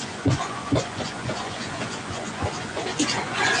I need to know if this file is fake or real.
fake